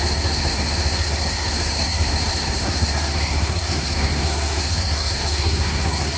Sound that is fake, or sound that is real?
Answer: fake